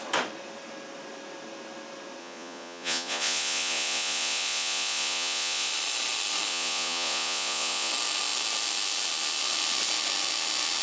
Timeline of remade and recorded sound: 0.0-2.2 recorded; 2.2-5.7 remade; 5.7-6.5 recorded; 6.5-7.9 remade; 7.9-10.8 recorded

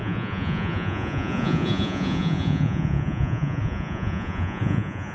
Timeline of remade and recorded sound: 0.0-5.1 remade